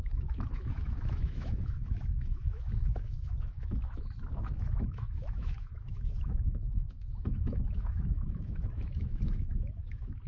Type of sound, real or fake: fake